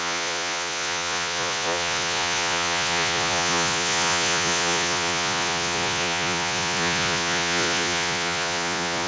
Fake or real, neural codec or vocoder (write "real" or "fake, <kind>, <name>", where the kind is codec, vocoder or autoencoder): fake, vocoder, Vocos